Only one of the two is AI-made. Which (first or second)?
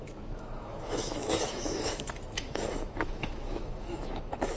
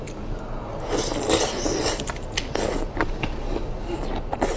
first